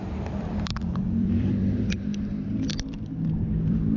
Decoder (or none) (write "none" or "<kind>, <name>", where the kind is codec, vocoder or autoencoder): vocoder, BigVGAN v2